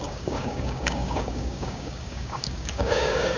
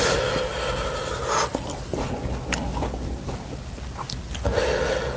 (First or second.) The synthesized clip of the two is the first